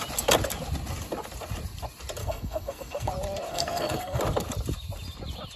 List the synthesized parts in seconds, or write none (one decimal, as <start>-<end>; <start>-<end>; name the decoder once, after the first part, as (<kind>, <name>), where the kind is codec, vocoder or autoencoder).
2.2-3.1 (codec, SNAC); 3.5-4.2